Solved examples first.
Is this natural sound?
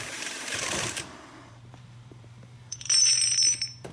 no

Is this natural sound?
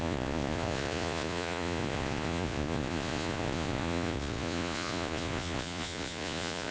no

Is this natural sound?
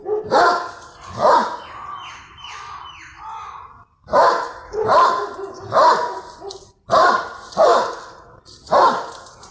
yes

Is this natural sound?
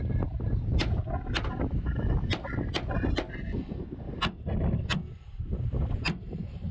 yes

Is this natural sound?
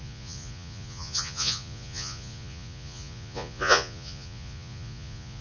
no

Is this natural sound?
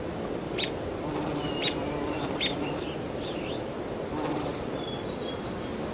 no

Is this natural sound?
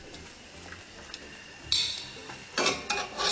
yes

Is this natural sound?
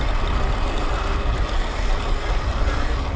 yes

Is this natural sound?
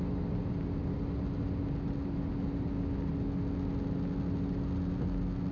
yes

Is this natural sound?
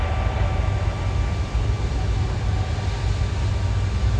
yes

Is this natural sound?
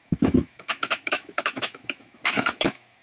no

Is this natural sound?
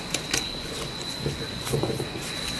no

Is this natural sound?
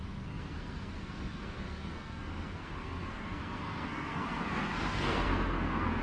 no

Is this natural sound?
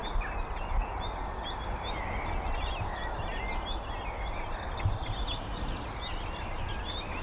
yes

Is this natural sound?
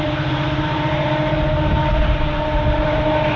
no